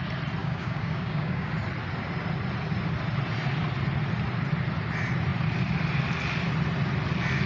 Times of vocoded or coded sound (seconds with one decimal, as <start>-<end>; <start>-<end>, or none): 0.4-1.5